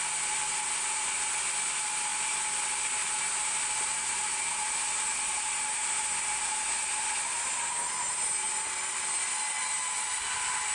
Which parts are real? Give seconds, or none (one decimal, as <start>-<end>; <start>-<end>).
0.0-10.7

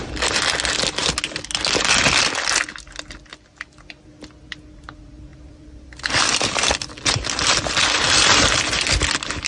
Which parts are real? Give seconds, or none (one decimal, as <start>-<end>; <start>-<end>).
0.0-5.3; 8.5-9.5